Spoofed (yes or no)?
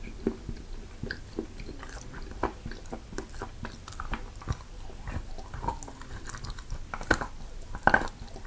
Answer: no